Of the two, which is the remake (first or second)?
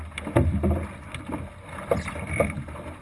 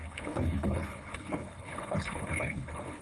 second